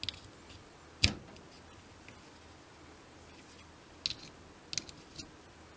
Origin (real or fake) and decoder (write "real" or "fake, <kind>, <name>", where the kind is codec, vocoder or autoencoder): real